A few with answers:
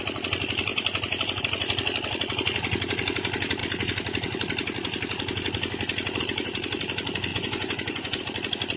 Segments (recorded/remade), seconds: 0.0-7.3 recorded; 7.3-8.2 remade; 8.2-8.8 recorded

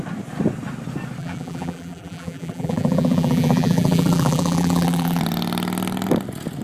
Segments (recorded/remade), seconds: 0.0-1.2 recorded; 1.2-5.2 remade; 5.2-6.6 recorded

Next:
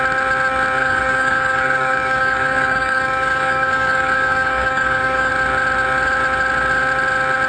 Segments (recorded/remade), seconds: 0.0-0.8 recorded; 0.8-5.3 remade; 5.3-7.5 recorded